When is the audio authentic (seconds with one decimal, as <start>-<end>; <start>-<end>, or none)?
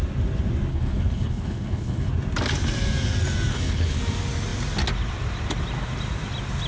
0.0-0.7; 2.1-3.5; 4.0-6.7